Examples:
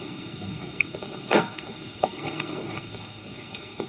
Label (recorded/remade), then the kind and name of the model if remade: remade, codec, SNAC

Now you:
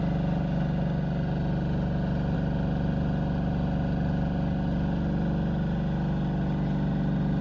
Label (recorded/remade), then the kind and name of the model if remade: recorded